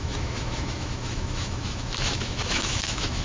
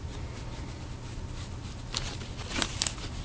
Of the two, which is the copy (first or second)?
first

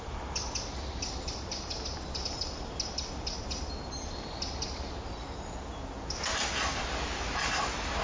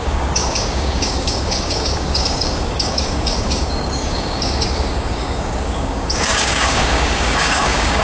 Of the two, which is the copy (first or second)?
second